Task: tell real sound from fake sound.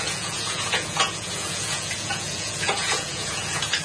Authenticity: fake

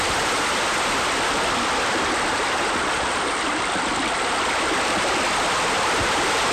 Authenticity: fake